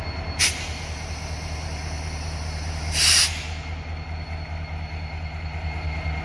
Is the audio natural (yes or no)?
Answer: yes